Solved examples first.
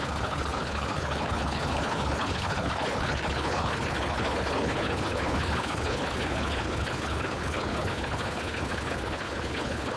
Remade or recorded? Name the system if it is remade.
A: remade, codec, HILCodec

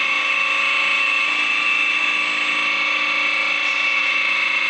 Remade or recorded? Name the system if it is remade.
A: recorded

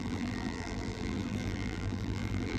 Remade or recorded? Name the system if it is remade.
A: remade, vocoder, BigVGAN v2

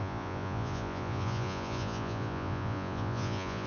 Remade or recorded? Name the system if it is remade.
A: remade, vocoder, Vocos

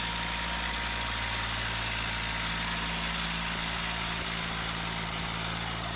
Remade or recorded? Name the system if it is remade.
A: recorded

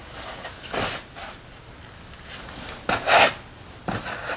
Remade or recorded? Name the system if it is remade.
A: recorded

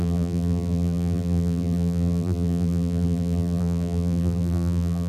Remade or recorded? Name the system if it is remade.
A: remade, vocoder, BigVGAN v2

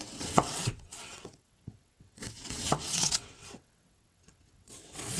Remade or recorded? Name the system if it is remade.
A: remade, vocoder, WaveNeXt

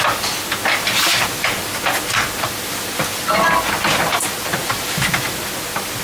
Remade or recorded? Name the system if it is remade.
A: recorded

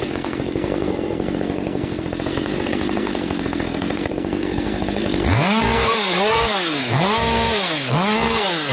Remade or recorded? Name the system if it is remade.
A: remade, codec, SNAC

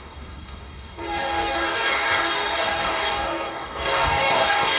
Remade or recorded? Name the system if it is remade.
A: remade, codec, DAC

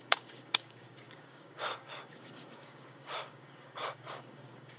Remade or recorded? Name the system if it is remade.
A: remade, codec, DAC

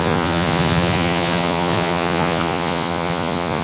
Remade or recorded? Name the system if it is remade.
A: remade, vocoder, Vocos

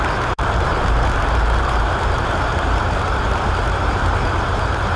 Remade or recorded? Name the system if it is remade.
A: remade, vocoder, BigVGAN v2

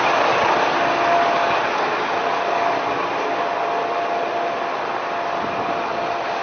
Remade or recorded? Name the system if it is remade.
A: recorded